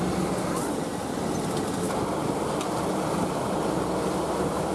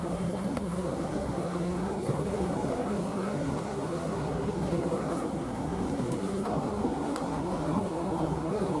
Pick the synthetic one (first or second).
second